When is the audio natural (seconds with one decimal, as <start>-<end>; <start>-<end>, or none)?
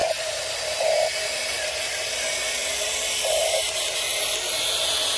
2.6-3.4; 4.1-5.2